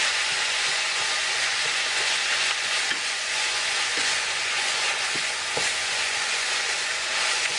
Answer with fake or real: fake